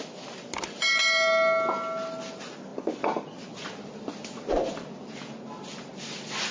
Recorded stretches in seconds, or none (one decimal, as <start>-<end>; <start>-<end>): 0.0-6.5